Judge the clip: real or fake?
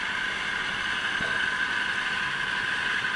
real